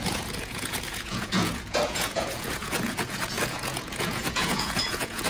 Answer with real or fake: fake